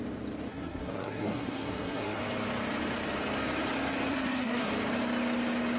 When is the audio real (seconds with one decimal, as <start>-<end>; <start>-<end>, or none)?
0.0-0.5; 2.2-4.1; 4.7-5.8